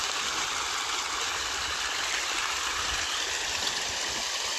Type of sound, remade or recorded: recorded